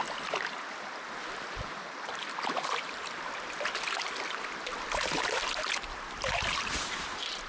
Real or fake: real